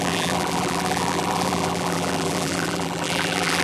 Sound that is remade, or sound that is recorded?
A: remade